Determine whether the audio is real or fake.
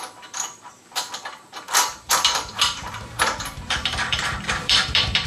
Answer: fake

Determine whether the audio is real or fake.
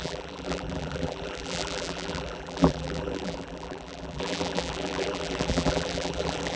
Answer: fake